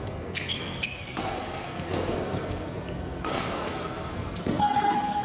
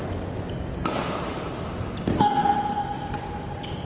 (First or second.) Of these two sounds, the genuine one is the second